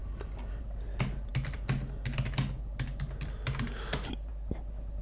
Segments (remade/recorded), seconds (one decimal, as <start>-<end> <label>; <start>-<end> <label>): 0.0-5.0 recorded